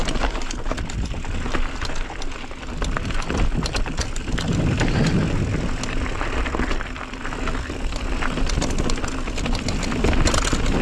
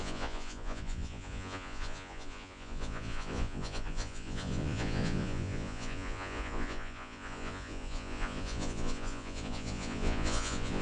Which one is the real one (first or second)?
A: first